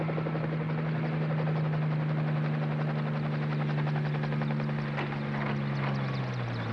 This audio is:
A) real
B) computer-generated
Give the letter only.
A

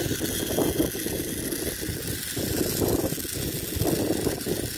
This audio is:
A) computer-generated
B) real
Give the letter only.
B